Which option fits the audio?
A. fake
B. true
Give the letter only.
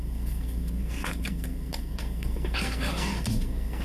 A